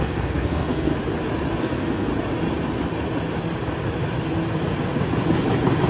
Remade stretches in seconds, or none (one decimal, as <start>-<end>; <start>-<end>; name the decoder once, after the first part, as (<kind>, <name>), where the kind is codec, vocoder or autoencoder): 0.0-0.9 (codec, SNAC); 1.6-2.1